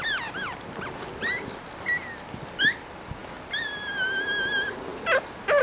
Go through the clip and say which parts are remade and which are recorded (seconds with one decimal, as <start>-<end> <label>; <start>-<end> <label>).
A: 0.0-5.6 recorded